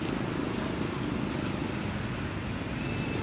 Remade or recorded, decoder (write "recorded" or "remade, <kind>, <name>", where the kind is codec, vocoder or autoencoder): recorded